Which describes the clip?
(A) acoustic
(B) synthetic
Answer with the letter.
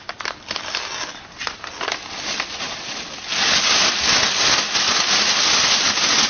A